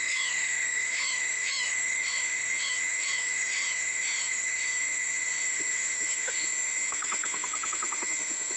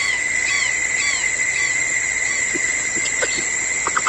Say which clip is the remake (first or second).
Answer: first